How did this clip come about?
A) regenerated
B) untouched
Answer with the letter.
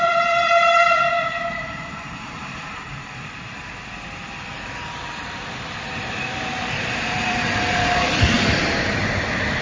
A